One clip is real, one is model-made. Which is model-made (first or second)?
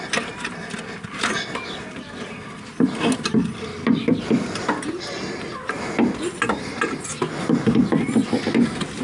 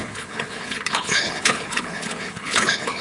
second